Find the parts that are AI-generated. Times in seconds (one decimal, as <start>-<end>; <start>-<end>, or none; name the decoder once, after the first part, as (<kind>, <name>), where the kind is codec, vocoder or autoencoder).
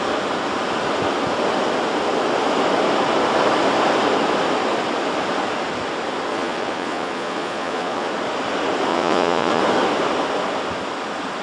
6.3-8.1 (vocoder, Vocos); 8.9-9.6